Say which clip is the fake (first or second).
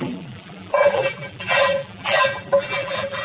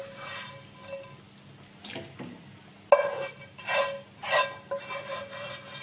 first